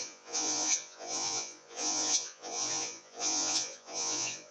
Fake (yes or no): yes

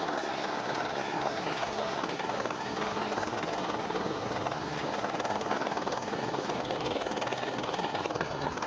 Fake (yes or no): yes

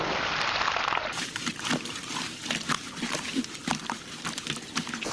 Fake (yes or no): no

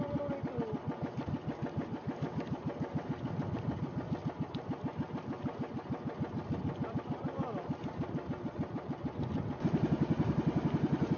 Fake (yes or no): no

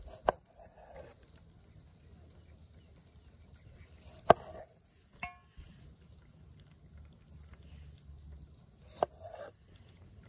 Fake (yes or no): no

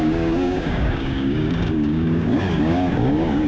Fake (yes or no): yes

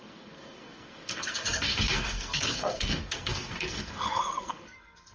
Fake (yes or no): yes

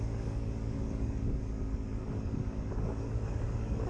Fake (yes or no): yes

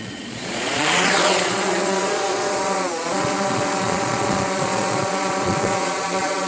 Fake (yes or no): yes